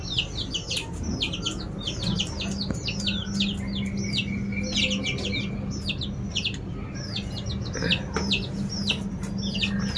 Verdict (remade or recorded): recorded